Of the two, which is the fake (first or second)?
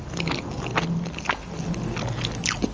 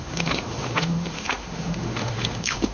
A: second